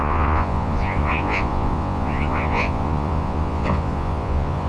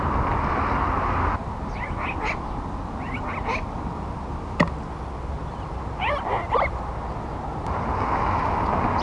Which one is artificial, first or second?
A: first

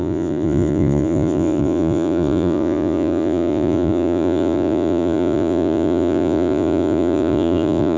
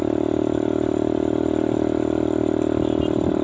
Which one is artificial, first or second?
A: first